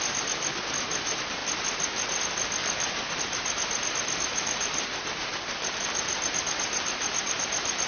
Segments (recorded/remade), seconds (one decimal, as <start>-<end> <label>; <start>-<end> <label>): 0.0-2.6 recorded; 2.6-3.2 remade; 3.2-4.3 recorded; 4.3-7.9 remade